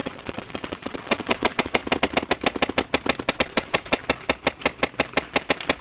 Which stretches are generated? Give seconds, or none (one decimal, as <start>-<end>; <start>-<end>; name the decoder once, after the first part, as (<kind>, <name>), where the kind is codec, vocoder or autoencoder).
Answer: 0.0-1.8 (vocoder, WaveNeXt); 3.3-4.0